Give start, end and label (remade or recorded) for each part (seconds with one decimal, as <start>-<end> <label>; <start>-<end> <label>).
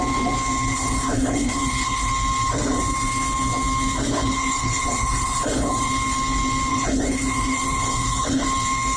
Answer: 0.0-0.7 recorded; 0.7-2.1 remade; 2.1-4.2 recorded; 4.2-5.9 remade; 5.9-6.7 recorded; 6.7-8.4 remade; 8.4-9.0 recorded